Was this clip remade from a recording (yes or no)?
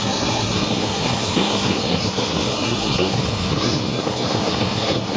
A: yes